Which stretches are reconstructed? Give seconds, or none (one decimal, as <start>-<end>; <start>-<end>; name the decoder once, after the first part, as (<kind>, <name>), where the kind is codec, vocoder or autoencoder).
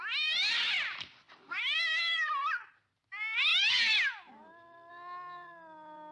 none